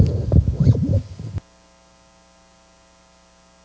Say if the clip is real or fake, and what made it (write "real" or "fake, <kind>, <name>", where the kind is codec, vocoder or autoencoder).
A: real